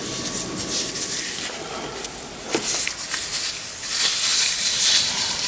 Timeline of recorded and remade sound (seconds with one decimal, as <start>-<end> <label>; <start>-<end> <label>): 0.0-4.3 recorded; 4.3-5.5 remade